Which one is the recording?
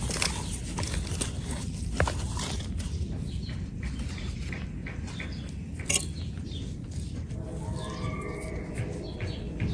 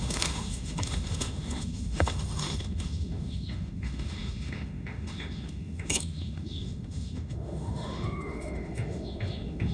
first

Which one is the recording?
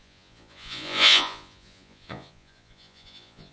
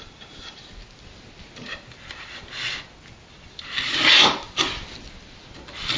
second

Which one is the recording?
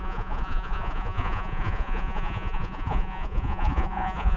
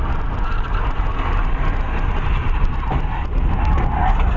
second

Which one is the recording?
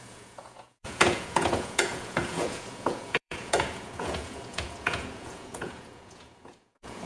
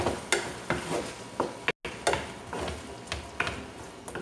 second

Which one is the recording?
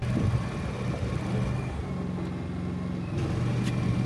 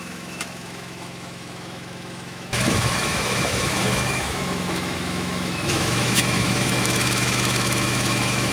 first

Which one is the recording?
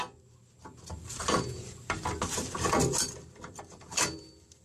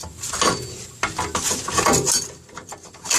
second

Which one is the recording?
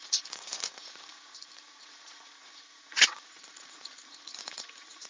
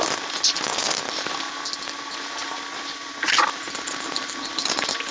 second